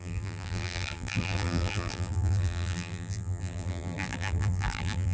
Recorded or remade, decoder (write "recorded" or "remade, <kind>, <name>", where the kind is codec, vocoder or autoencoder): remade, vocoder, BigVGAN v2